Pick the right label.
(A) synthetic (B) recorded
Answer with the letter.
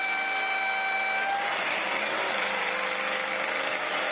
B